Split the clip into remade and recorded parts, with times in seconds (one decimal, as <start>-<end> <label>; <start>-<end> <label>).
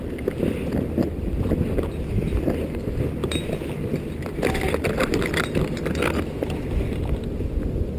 0.0-3.2 recorded; 3.2-4.7 remade; 4.7-8.0 recorded